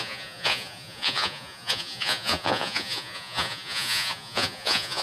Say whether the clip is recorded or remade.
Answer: remade